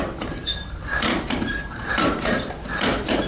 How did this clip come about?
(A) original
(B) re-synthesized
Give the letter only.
B